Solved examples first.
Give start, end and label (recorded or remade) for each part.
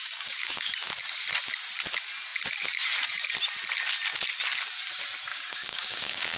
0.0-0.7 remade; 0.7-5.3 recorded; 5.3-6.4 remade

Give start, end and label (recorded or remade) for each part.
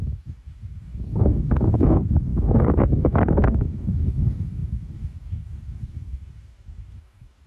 0.0-7.5 remade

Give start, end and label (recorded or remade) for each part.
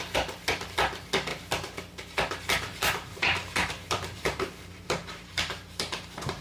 0.0-2.7 recorded; 2.7-6.4 remade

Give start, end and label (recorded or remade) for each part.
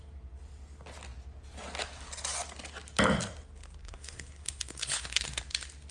0.0-3.8 recorded; 3.8-5.4 remade; 5.4-5.9 recorded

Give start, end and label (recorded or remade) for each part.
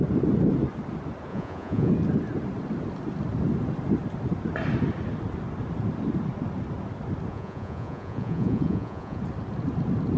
0.0-1.3 recorded; 1.3-1.9 remade; 1.9-7.3 recorded; 7.3-9.2 remade; 9.2-10.2 recorded